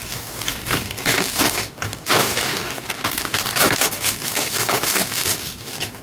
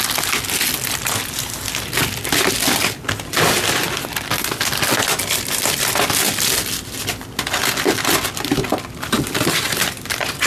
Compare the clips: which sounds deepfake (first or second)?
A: first